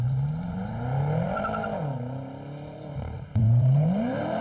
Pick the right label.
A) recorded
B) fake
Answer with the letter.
B